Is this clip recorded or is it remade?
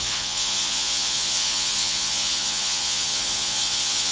remade